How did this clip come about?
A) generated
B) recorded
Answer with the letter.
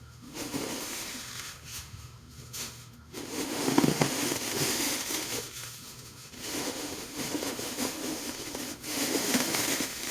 A